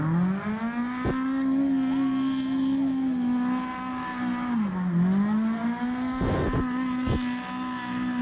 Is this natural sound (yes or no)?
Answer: yes